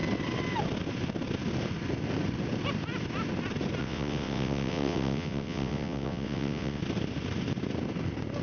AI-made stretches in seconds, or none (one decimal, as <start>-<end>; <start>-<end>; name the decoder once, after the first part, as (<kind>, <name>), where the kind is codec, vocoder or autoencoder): 3.8-6.8 (vocoder, WaveNeXt)